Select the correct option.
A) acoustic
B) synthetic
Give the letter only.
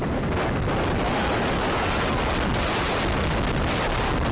A